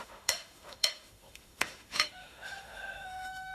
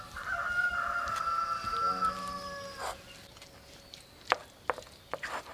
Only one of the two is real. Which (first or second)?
second